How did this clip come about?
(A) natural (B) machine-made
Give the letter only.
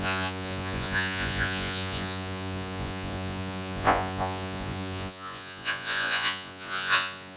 B